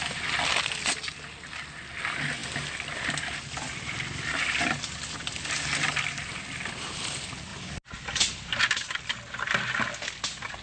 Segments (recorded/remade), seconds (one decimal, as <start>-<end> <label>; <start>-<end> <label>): 0.0-10.6 recorded